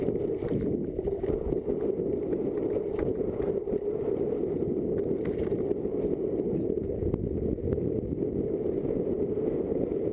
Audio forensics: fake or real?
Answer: real